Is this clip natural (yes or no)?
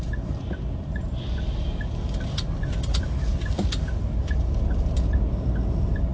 yes